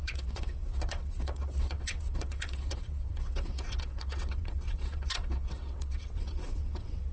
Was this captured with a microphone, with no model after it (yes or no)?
no